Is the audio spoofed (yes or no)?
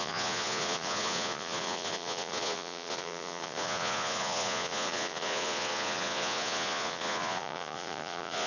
yes